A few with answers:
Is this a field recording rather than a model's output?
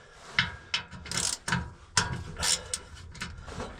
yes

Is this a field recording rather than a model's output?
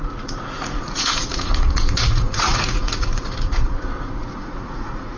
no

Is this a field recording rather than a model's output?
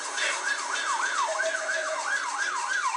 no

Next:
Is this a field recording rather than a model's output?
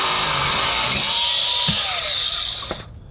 yes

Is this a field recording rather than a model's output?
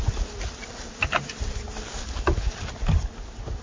yes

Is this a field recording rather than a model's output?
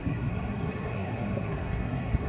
no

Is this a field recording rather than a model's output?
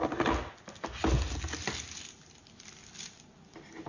yes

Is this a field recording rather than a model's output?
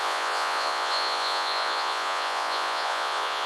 no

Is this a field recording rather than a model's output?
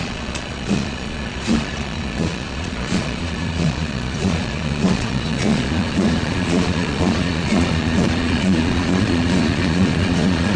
no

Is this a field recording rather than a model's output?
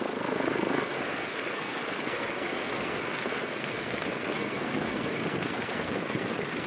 no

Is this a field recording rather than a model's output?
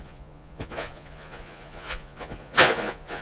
no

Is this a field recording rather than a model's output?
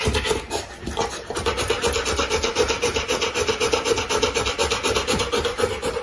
yes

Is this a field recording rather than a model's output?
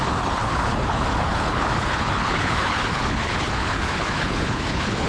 no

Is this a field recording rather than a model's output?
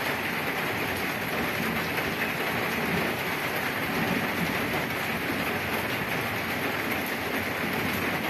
yes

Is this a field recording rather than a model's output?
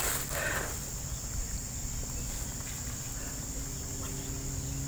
yes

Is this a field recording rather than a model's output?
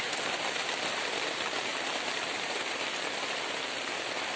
yes